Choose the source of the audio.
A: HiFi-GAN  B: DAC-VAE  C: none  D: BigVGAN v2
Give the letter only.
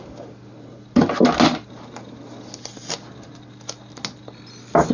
C